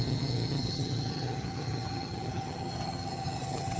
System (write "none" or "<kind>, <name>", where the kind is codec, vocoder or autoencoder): vocoder, HiFi-GAN